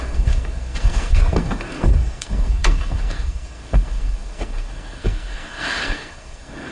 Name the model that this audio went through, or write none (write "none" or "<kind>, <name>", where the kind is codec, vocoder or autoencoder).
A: codec, SNAC